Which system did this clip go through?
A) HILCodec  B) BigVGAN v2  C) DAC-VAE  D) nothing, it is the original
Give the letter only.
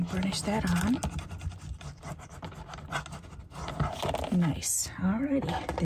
D